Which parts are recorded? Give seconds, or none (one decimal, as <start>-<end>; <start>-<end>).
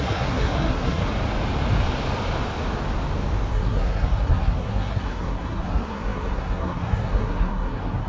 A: 1.0-3.5